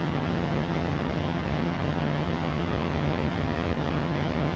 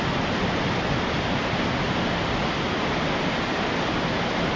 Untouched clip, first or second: second